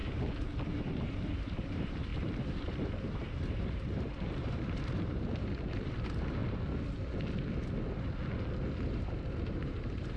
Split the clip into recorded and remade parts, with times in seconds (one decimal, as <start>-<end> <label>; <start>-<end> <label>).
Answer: 0.0-6.4 remade; 6.4-8.9 recorded; 8.9-10.2 remade